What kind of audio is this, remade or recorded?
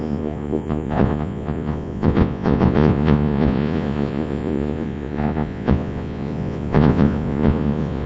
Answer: remade